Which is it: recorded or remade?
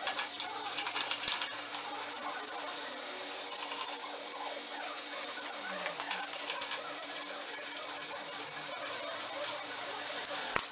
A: recorded